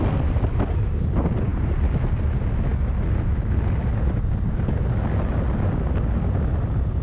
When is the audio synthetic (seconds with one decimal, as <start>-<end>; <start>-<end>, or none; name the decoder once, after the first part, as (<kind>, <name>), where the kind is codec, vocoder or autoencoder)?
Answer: none